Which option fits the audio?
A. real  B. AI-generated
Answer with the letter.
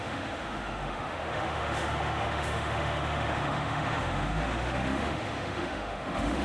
B